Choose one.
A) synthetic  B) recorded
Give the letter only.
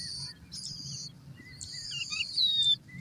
A